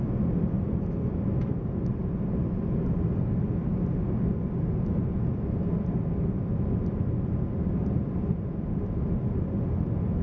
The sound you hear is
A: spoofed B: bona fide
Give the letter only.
B